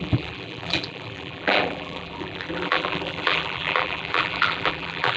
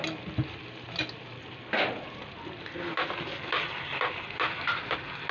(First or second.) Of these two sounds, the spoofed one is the first